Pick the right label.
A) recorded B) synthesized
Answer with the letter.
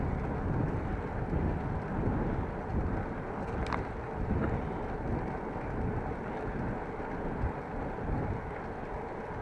A